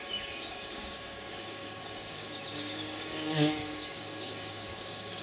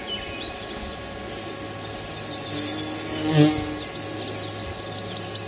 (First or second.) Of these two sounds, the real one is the second